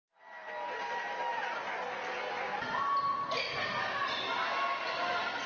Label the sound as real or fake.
real